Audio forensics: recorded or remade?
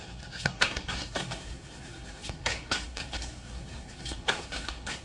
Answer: remade